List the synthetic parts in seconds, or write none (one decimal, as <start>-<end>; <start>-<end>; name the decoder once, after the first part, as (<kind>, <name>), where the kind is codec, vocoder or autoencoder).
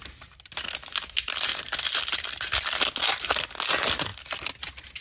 1.5-3.4 (vocoder, BigVGAN v2); 4.1-5.0